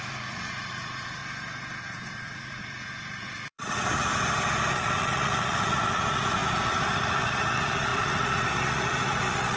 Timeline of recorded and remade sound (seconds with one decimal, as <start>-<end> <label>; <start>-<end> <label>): 0.0-1.2 remade; 1.2-1.8 recorded; 1.8-4.1 remade; 4.1-4.7 recorded; 4.7-9.6 remade